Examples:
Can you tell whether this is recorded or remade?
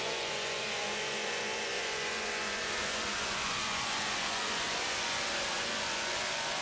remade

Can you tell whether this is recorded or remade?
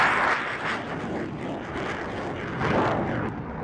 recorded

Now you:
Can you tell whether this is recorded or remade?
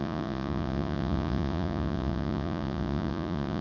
remade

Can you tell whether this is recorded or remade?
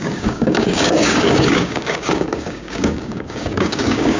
remade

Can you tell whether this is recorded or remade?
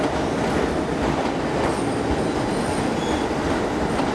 recorded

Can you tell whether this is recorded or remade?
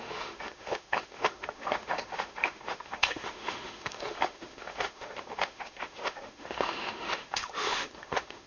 remade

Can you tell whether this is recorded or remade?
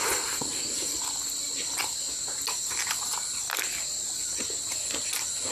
recorded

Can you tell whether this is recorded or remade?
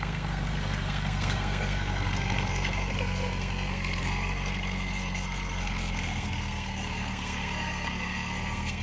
remade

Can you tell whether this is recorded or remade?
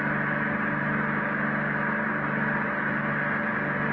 recorded